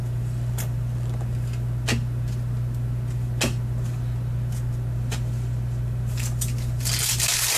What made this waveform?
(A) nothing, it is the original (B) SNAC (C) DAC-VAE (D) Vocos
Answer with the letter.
A